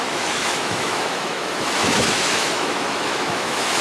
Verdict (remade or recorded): remade